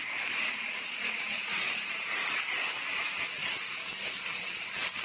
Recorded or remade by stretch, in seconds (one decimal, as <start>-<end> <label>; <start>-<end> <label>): 0.0-3.0 remade; 3.0-3.4 recorded; 3.4-4.3 remade; 4.3-5.0 recorded